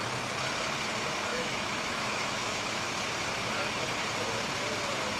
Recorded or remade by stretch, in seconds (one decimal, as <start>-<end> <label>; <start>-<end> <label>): 0.0-1.3 recorded; 1.3-2.9 remade; 2.9-5.2 recorded